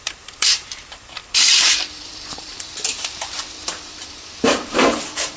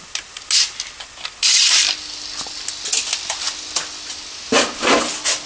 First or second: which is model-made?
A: first